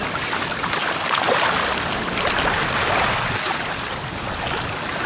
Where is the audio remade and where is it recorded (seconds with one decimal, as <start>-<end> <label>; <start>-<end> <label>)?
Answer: 0.0-5.1 recorded